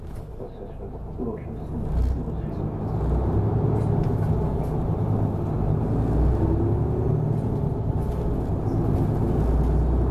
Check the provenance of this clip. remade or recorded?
recorded